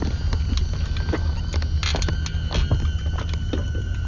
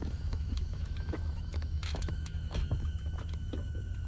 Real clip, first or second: first